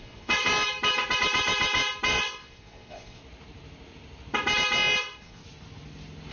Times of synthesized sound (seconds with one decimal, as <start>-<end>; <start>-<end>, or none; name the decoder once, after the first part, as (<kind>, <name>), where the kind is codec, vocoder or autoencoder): 0.0-0.5 (vocoder, Vocos); 2.1-3.2; 5.0-5.4